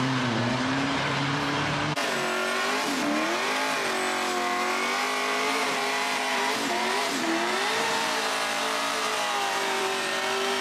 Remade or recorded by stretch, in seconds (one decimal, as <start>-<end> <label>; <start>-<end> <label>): 0.0-2.0 remade; 2.0-5.2 recorded; 5.2-10.6 remade